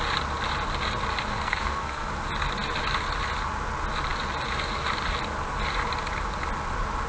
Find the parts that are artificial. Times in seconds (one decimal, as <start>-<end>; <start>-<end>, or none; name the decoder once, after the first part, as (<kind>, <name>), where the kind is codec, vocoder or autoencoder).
1.3-2.1 (codec, SNAC)